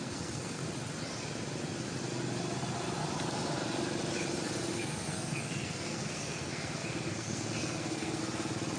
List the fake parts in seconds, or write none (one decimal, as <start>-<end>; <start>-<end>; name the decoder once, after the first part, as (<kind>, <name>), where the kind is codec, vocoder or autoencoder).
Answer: 0.0-0.6 (codec, SNAC); 4.7-8.2